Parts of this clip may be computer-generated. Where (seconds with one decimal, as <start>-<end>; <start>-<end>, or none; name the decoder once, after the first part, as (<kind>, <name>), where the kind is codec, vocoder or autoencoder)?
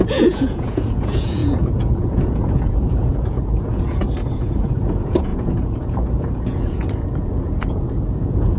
0.0-8.6 (vocoder, Vocos)